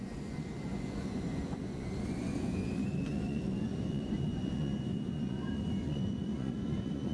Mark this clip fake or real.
fake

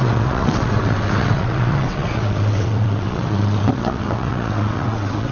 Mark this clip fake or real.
fake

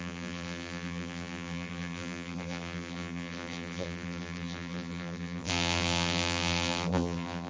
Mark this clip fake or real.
fake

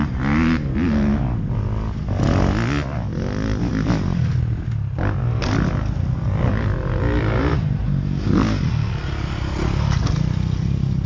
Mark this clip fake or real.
real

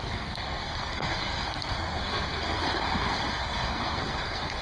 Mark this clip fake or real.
fake